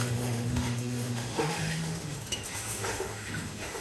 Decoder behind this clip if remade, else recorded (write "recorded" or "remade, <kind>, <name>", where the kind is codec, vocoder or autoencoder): remade, autoencoder, DAC-VAE